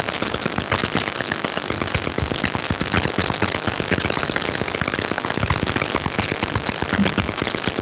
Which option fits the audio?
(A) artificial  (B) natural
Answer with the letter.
B